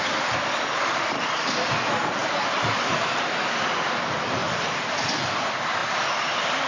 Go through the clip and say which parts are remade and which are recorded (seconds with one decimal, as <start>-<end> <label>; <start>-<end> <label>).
0.0-4.4 remade; 4.4-5.1 recorded; 5.1-5.8 remade; 5.8-6.3 recorded; 6.3-6.7 remade